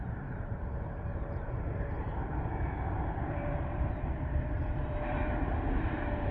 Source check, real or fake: fake